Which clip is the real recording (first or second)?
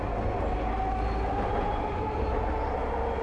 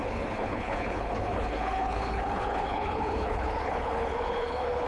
first